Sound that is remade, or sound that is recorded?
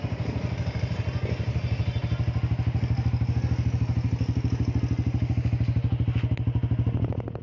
recorded